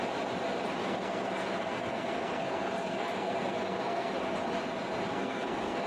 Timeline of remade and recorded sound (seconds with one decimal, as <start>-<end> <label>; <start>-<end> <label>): 0.0-0.8 recorded; 0.8-4.1 remade; 4.1-5.1 recorded; 5.1-5.9 remade